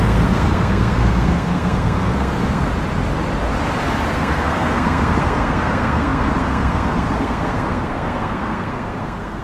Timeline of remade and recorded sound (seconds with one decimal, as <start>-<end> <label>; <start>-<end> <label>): 0.0-2.7 remade; 2.7-4.1 recorded; 4.1-9.4 remade